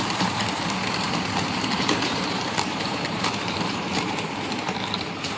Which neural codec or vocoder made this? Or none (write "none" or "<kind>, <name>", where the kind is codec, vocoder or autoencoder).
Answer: vocoder, BigVGAN v2